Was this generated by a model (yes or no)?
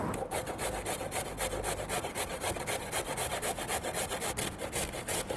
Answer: no